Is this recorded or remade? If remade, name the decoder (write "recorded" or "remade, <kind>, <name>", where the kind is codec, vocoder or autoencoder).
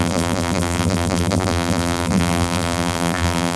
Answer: remade, vocoder, BigVGAN v2